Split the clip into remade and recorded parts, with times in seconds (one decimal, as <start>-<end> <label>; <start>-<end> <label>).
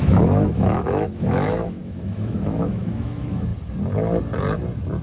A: 0.0-3.5 remade; 3.5-5.0 recorded